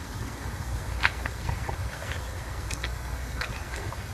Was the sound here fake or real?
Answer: fake